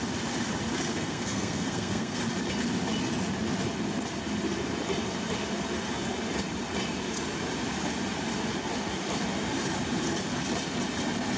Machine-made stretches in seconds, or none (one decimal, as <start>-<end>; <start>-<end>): 0.9-2.2